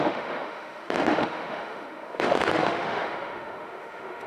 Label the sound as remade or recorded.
remade